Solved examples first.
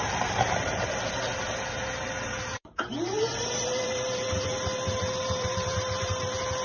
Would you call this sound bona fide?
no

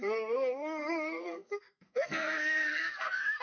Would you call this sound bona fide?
no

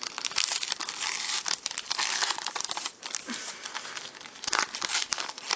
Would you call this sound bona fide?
no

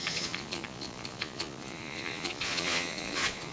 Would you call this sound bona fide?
no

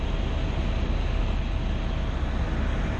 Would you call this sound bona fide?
yes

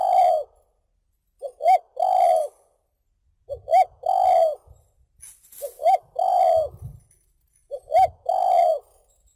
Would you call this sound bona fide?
yes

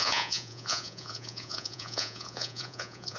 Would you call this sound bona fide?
no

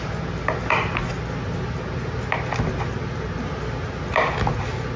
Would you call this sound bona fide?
yes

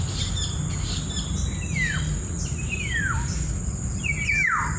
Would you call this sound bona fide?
yes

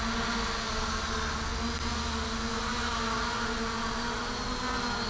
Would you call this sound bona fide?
yes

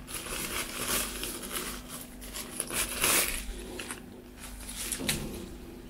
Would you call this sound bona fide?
yes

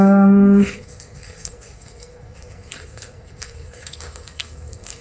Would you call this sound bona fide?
no